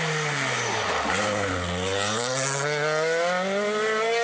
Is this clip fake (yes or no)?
no